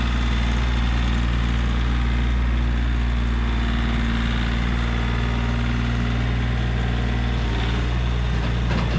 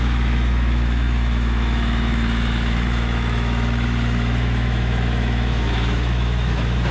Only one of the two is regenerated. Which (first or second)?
second